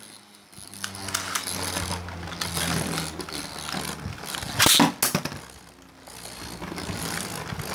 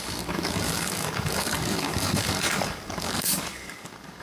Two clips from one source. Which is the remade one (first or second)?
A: second